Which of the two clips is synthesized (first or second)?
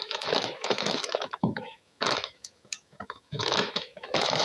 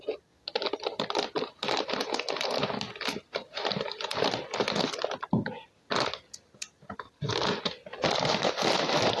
first